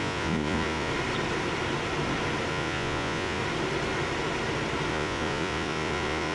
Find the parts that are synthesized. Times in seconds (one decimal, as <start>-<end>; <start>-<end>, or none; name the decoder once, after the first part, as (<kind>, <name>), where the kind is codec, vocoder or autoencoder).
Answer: 0.0-0.9 (vocoder, Vocos); 2.5-3.4; 4.9-6.3